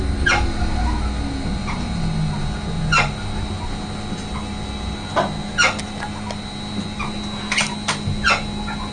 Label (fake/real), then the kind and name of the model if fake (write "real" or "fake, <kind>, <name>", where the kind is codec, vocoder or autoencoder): real